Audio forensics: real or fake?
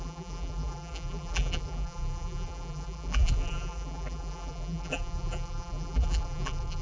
fake